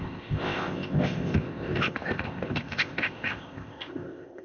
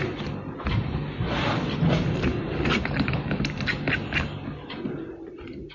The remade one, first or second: first